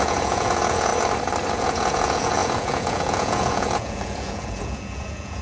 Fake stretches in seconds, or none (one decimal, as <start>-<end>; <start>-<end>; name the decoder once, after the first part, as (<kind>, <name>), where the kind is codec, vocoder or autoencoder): 0.0-0.9 (vocoder, Vocos); 1.5-5.4